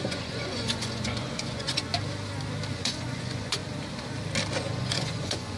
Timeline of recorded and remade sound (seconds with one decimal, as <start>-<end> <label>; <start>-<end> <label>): 0.0-1.9 remade; 1.9-2.7 recorded; 2.7-3.6 remade; 3.6-4.6 recorded; 4.6-5.6 remade